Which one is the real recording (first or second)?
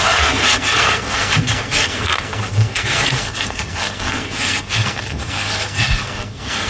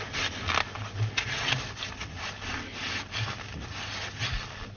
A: second